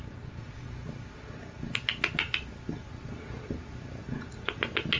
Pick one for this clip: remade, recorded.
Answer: recorded